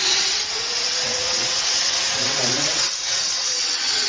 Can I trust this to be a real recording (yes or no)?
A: no